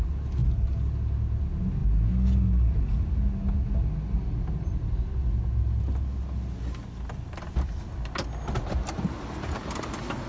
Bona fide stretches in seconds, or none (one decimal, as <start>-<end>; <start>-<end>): 0.0-10.3